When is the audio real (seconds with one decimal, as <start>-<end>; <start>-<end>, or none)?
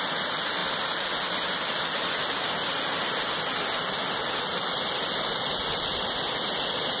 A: 0.0-7.0